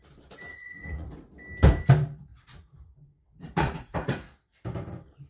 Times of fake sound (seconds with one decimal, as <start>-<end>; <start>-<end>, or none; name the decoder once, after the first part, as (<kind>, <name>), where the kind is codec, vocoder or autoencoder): 0.5-1.3 (vocoder, Vocos); 2.3-4.3